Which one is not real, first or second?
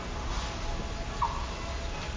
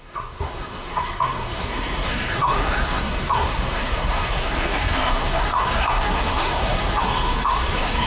second